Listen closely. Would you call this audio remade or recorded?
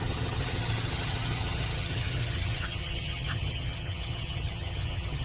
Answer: remade